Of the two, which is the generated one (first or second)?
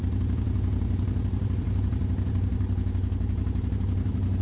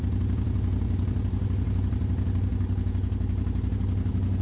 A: first